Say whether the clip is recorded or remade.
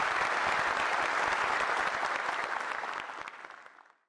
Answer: recorded